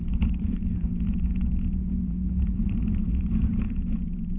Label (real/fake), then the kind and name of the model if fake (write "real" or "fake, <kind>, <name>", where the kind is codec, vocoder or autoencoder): fake, vocoder, Vocos